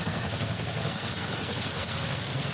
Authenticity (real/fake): fake